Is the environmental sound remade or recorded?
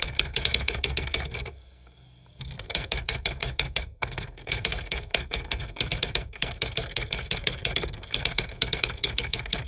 remade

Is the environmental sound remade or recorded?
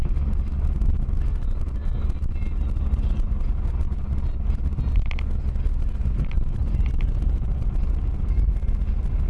recorded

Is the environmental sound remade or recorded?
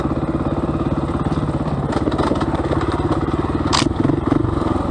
recorded